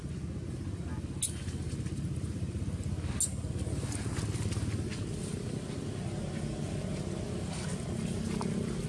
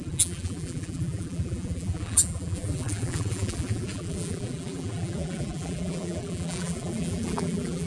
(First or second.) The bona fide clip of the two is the first